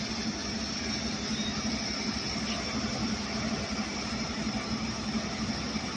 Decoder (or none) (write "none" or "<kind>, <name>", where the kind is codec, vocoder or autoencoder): none